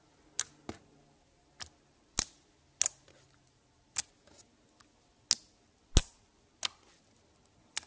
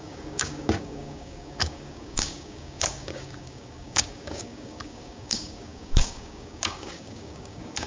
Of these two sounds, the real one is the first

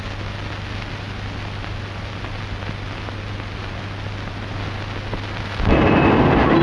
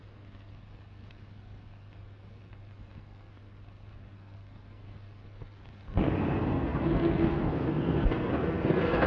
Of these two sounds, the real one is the first